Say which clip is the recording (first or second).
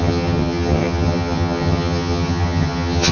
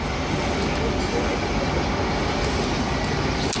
second